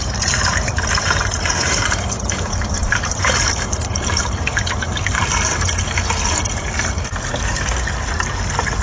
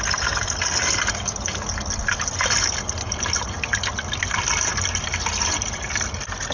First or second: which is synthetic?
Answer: first